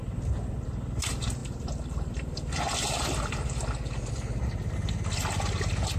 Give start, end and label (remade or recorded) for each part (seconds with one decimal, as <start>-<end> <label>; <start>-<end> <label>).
0.0-1.4 recorded; 1.4-4.1 remade; 4.1-6.0 recorded